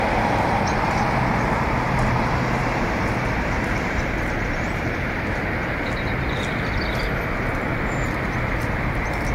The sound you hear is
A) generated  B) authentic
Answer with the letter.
A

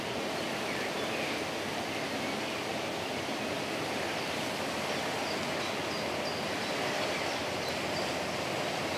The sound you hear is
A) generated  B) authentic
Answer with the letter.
B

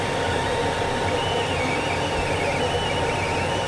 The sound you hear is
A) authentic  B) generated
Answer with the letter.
A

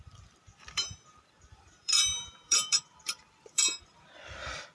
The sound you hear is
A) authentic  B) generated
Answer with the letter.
B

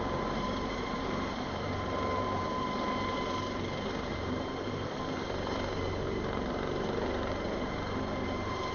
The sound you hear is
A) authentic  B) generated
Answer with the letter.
B